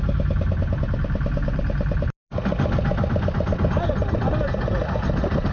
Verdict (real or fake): real